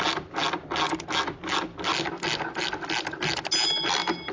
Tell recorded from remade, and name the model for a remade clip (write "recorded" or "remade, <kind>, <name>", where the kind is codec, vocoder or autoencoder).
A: recorded